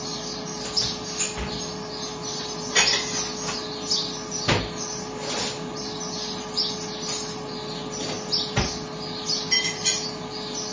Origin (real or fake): real